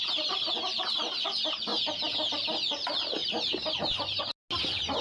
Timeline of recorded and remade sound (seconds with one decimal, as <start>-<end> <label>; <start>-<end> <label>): 0.0-1.7 recorded; 1.7-2.3 remade; 2.3-5.0 recorded